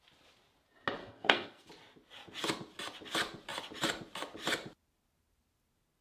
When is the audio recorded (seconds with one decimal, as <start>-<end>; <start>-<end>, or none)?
0.0-1.0; 1.7-6.0

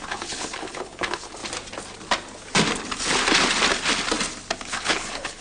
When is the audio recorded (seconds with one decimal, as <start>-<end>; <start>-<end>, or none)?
1.4-4.6

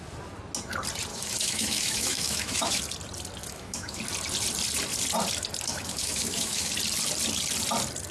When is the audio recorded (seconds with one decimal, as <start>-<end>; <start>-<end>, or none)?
0.0-1.1; 2.8-3.4; 4.0-5.7; 6.7-8.1

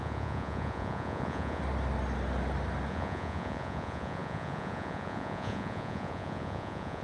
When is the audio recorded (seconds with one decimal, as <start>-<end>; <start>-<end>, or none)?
1.6-2.9

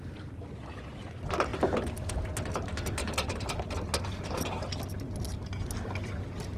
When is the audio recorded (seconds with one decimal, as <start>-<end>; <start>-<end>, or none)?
0.0-1.5; 2.1-3.0; 3.7-6.6

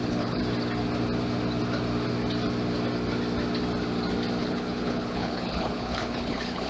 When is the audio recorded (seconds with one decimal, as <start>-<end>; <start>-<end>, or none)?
0.4-4.4

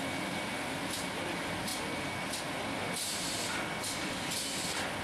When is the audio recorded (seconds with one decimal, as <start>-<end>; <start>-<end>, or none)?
0.0-5.0

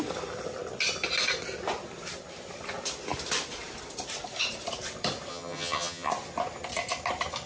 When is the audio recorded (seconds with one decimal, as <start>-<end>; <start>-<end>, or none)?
0.0-5.3; 6.1-7.5